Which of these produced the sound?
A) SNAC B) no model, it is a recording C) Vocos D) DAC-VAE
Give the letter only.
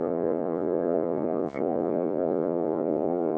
C